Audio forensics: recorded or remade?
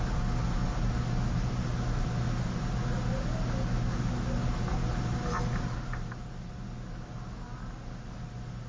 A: recorded